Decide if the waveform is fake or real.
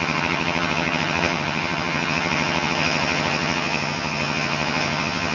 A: fake